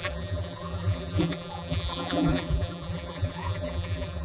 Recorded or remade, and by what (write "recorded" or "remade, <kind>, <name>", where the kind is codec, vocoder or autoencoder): remade, vocoder, BigVGAN v2